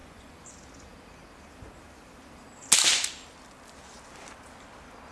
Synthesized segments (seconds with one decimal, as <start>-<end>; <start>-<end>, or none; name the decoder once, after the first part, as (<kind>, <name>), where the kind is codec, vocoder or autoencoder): 0.0-0.5 (vocoder, Vocos)